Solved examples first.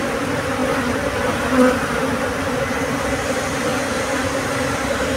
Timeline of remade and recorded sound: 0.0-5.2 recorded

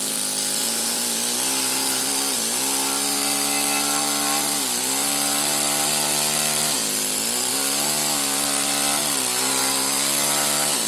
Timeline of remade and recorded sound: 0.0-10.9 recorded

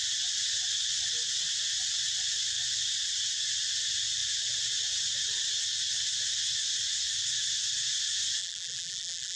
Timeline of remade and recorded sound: 0.0-8.4 recorded; 8.4-9.4 remade

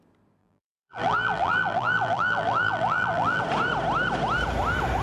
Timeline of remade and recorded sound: 0.0-0.4 recorded; 0.4-3.4 remade; 3.4-5.0 recorded

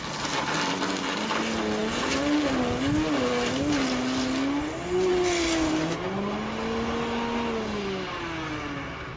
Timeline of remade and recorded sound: 0.0-9.2 recorded